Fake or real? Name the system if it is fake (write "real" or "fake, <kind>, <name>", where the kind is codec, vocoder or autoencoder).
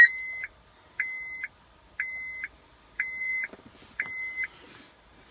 real